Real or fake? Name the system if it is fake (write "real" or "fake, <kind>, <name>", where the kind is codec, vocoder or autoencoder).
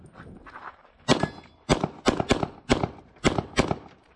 real